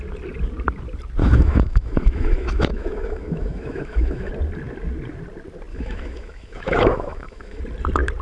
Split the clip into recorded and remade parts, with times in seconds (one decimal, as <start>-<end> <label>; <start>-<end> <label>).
0.0-1.2 recorded; 1.2-4.3 remade; 4.3-5.7 recorded; 5.7-7.6 remade; 7.6-8.2 recorded